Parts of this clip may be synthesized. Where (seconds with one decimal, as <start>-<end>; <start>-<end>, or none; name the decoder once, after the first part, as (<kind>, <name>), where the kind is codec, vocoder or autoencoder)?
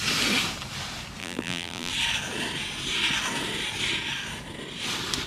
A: 1.2-1.9 (vocoder, BigVGAN v2)